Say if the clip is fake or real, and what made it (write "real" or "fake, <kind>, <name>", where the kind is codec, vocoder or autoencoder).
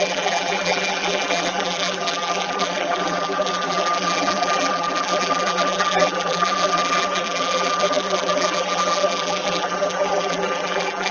fake, vocoder, BigVGAN v2